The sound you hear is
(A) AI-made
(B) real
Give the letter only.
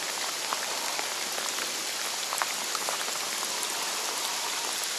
B